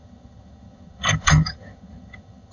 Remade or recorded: remade